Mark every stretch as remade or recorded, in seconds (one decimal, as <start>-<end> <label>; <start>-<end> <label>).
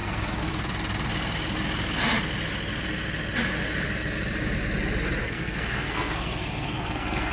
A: 0.0-0.5 remade; 0.5-5.2 recorded; 5.2-7.3 remade